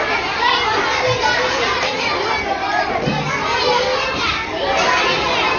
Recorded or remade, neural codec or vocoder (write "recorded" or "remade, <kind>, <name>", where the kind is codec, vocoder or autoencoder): recorded